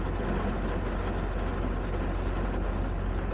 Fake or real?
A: real